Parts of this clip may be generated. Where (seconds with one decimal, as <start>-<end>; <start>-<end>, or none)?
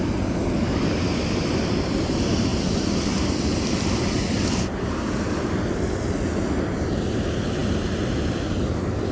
none